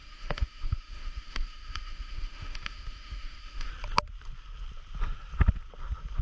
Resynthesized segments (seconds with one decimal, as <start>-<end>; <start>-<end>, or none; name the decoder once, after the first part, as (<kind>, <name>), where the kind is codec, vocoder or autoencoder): 0.0-3.7 (autoencoder, DAC-VAE)